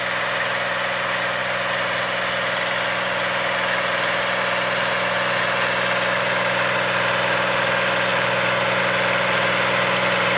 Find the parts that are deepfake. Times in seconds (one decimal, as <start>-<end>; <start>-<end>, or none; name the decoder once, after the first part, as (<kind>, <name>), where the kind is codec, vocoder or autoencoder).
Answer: none